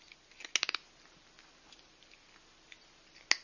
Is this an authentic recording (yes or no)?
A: yes